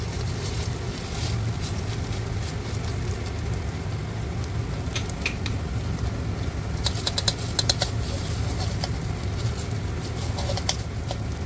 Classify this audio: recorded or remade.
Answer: recorded